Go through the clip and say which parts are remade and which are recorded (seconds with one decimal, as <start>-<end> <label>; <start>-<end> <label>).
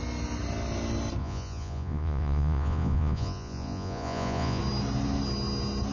0.0-1.2 recorded; 1.2-4.6 remade; 4.6-5.9 recorded